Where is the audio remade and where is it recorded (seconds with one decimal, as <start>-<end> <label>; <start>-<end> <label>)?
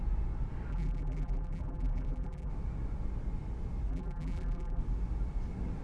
0.0-0.7 recorded; 0.7-2.5 remade; 2.5-3.9 recorded; 3.9-4.8 remade; 4.8-5.8 recorded